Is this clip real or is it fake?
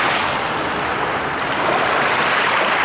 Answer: real